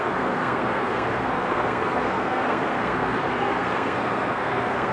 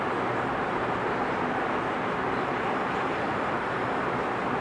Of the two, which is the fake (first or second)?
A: first